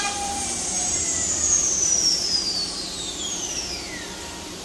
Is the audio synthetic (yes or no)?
yes